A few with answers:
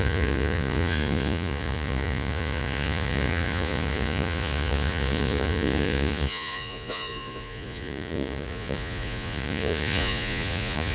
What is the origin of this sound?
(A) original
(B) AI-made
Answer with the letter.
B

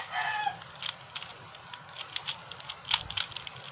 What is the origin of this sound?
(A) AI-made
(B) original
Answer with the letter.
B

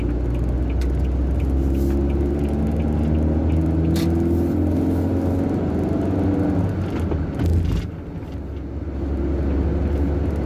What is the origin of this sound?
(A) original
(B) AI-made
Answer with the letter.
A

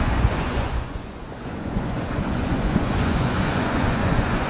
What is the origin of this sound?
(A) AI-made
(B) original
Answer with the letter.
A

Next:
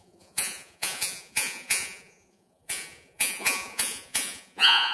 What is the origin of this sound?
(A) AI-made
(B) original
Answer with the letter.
A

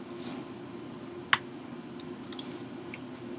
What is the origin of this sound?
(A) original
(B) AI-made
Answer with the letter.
A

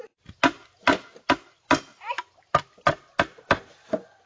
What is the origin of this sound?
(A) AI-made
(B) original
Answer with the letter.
B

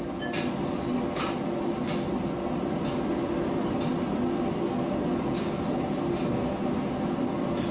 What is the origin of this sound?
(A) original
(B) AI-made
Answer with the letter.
A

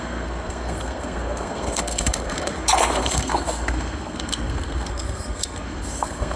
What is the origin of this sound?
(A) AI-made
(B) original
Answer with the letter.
A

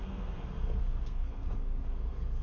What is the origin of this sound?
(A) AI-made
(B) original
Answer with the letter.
A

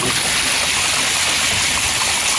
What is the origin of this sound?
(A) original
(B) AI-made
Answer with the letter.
A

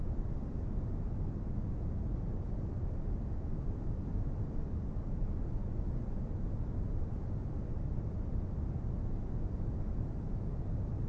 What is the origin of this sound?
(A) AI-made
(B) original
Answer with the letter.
B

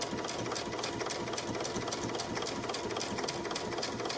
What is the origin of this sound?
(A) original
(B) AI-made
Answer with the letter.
A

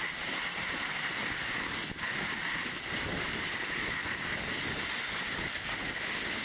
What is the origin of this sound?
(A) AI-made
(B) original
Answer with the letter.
B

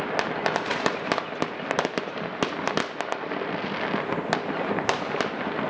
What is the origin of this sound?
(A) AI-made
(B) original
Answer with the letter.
B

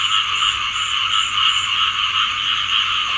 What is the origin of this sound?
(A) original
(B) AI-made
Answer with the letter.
A